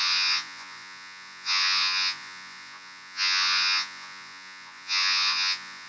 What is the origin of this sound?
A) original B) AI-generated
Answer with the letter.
B